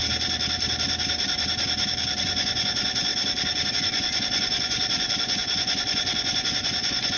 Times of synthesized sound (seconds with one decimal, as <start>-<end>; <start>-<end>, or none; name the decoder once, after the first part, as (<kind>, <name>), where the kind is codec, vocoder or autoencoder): 2.2-3.1 (vocoder, Vocos); 3.7-7.2